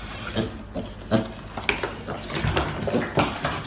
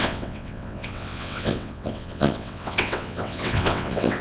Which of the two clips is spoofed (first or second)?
second